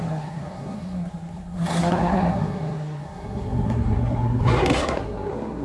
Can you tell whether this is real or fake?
fake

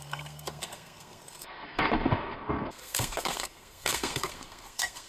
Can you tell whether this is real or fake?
fake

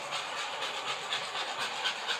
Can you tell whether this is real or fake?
real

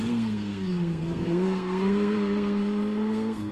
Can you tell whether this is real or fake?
fake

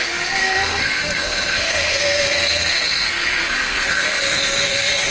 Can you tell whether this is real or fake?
fake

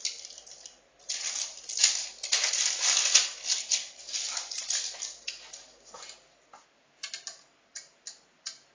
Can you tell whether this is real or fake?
real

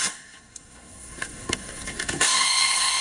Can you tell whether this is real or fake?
fake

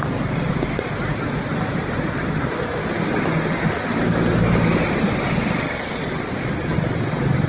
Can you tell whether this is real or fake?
real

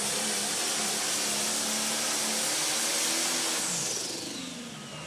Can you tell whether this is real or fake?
real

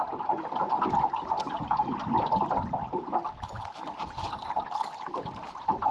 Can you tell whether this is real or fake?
real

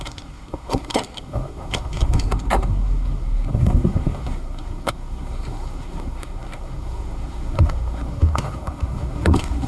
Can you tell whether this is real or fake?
fake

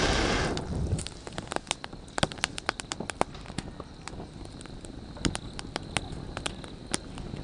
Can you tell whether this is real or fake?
real